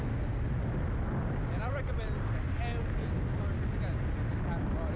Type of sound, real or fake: real